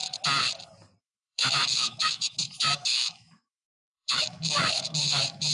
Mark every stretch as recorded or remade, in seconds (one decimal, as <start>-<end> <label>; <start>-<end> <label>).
0.0-1.0 recorded; 1.0-5.5 remade